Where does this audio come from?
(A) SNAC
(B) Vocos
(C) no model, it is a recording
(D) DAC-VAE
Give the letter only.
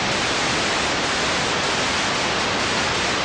C